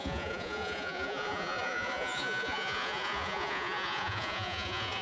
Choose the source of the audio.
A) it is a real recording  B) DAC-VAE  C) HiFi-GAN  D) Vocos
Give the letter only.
D